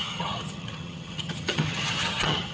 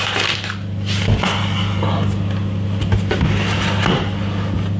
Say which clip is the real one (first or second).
second